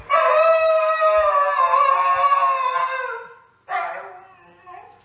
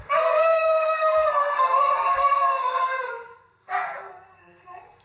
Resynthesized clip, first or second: second